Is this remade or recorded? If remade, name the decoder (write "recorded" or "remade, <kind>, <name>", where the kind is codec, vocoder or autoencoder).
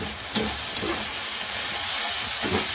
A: recorded